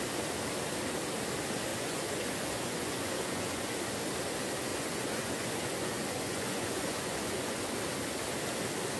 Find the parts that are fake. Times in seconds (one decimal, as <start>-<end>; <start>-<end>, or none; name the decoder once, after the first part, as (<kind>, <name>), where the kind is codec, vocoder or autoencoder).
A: 1.7-3.7 (vocoder, Vocos); 4.7-7.6